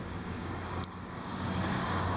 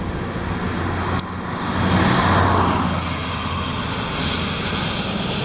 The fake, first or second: first